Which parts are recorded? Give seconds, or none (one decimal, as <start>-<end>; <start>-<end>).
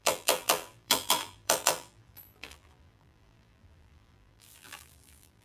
none